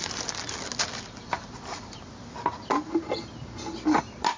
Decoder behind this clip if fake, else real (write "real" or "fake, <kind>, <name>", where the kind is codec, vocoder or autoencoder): real